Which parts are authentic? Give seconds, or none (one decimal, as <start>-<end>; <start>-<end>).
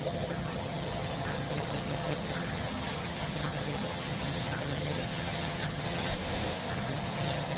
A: 6.1-6.7